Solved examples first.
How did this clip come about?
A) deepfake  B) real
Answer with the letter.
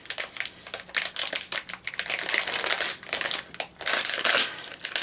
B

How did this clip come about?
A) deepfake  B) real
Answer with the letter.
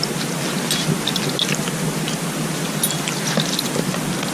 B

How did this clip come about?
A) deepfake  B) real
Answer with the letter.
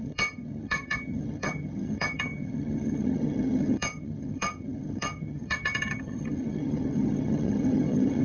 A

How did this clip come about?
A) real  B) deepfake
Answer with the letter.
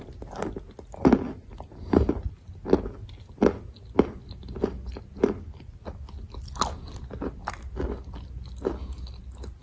A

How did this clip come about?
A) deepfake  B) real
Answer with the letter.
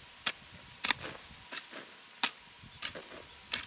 B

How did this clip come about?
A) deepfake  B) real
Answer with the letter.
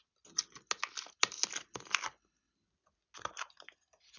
B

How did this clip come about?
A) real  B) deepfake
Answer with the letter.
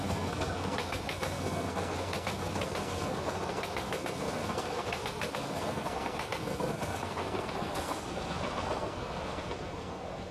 B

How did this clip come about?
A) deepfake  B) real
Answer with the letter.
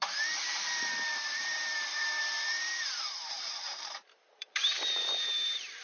A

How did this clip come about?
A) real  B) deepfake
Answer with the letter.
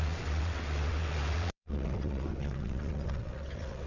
B